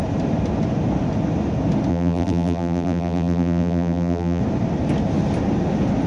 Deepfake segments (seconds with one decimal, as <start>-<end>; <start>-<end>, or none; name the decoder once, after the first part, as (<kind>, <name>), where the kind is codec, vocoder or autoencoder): 1.9-4.4 (vocoder, BigVGAN v2)